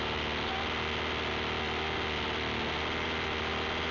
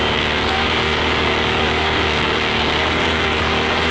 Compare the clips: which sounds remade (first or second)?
second